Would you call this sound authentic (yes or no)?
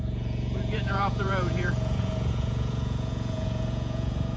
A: no